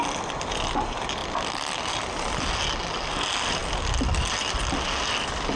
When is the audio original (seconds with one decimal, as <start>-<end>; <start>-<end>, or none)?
0.0-5.6